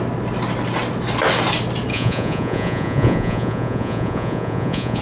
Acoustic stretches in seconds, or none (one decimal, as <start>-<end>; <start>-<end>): 0.0-1.9